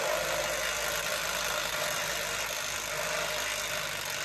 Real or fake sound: real